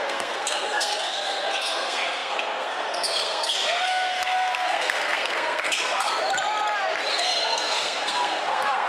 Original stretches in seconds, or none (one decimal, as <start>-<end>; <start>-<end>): 6.2-7.1